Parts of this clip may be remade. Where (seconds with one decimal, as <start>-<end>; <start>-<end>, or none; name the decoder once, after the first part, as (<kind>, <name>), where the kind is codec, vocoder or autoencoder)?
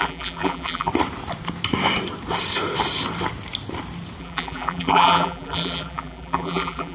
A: 0.0-0.9 (vocoder, BigVGAN v2); 4.2-6.9